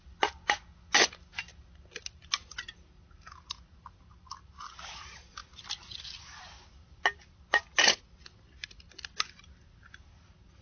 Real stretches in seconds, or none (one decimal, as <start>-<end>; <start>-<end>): 0.0-10.6